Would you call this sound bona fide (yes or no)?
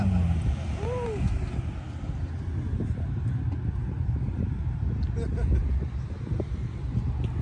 yes